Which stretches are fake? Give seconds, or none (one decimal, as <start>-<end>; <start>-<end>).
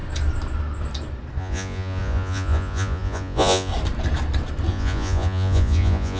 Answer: 1.4-3.7; 4.7-6.2